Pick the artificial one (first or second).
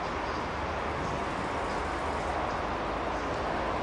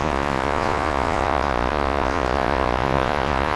second